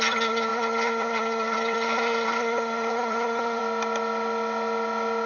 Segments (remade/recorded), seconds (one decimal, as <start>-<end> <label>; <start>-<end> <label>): 0.0-3.6 remade; 3.6-5.3 recorded